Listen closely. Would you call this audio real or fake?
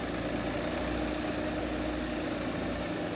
real